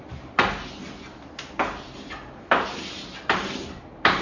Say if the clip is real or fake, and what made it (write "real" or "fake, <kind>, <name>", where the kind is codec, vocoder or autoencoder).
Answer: real